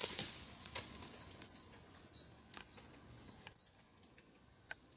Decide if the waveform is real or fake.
fake